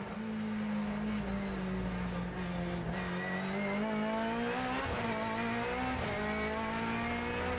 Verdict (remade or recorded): recorded